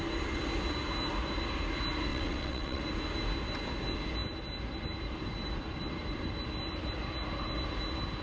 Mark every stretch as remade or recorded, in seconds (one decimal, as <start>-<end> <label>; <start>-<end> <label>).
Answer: 0.0-2.1 recorded; 2.1-2.8 remade; 2.8-8.2 recorded